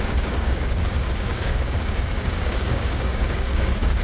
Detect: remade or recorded remade